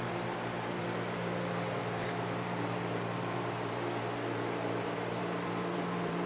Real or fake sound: fake